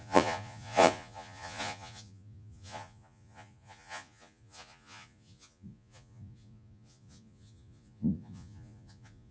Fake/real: fake